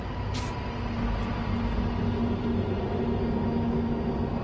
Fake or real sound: real